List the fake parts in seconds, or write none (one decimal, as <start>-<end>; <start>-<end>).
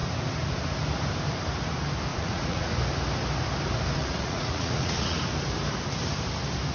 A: 2.1-2.7; 4.0-5.2